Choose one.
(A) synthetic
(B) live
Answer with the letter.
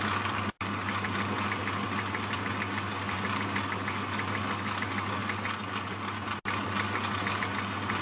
B